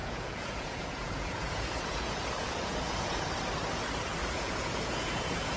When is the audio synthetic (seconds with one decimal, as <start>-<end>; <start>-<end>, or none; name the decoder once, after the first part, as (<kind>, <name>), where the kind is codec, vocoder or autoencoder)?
0.0-3.2 (vocoder, Vocos); 4.2-5.6